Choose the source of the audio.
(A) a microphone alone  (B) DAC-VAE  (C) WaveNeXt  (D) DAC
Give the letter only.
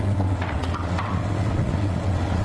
C